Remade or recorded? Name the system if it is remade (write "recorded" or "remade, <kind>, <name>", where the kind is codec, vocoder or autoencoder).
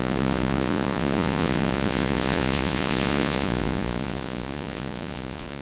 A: remade, vocoder, Vocos